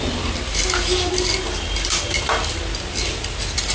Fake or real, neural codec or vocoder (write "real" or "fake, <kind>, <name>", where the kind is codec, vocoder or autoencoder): real